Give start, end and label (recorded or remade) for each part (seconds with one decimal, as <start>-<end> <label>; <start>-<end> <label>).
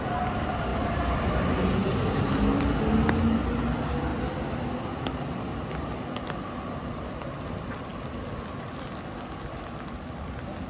0.0-10.7 recorded